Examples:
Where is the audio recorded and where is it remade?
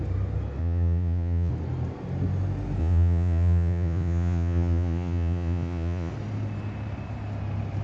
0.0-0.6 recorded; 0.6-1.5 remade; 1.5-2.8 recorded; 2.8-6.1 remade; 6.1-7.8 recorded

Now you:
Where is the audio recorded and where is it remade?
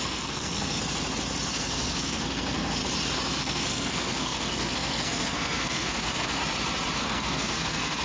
0.0-0.8 remade; 0.8-1.5 recorded; 1.5-2.8 remade; 2.8-3.4 recorded; 3.4-6.4 remade; 6.4-7.0 recorded; 7.0-8.0 remade